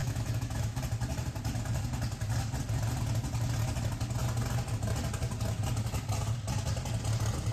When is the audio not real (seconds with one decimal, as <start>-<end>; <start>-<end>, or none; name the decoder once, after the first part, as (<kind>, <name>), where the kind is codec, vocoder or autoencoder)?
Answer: 0.0-0.8 (autoencoder, DAC-VAE)